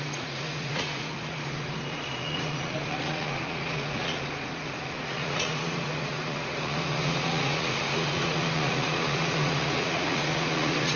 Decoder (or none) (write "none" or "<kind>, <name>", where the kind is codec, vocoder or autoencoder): vocoder, Vocos